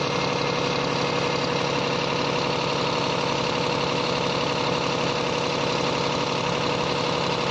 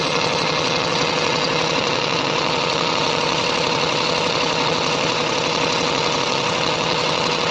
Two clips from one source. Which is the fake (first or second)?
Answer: second